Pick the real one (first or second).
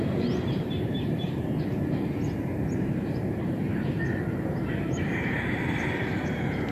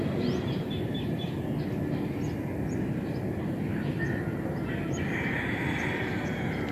second